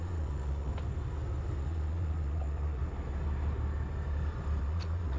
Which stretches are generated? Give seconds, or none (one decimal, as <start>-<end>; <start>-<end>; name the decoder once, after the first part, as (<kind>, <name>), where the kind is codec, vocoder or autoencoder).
0.0-0.7 (vocoder, Vocos); 1.6-2.8; 4.6-5.2